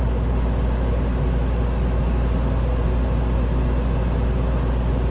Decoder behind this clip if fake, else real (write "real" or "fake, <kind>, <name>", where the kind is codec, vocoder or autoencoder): real